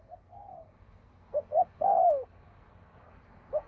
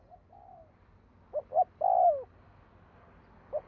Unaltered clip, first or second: second